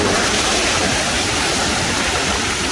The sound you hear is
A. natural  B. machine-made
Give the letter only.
A